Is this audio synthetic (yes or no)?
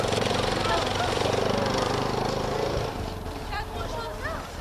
no